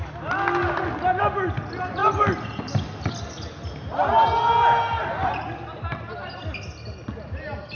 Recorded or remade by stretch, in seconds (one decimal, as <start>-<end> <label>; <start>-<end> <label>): 0.0-7.7 recorded